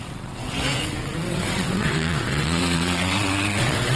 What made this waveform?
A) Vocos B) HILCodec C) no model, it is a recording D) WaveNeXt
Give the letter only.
D